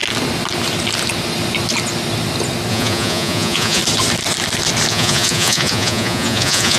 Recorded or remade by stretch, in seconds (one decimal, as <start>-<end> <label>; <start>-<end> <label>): 0.0-2.7 recorded; 2.7-3.8 remade; 3.8-4.9 recorded; 4.9-6.8 remade